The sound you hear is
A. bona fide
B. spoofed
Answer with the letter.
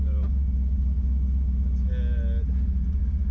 A